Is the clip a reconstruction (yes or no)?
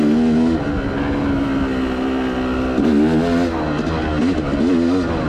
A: no